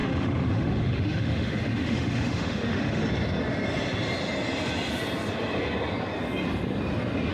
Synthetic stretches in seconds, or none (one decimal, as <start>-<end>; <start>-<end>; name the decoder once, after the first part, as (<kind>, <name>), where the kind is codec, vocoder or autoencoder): 0.0-3.0 (autoencoder, DAC-VAE)